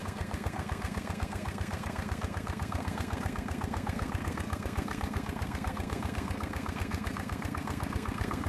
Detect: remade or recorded remade